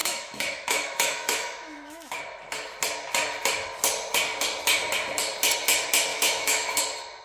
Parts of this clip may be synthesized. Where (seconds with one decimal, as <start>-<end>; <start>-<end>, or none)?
0.0-2.2; 6.1-6.8